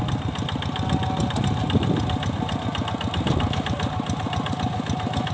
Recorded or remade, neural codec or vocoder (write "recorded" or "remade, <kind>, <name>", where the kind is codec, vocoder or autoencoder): recorded